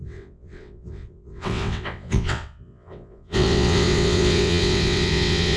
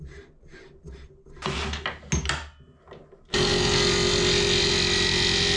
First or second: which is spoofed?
first